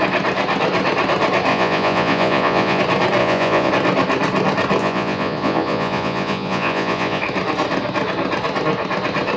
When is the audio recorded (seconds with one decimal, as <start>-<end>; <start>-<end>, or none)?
0.0-1.5; 2.8-3.2; 3.7-4.8; 7.2-9.4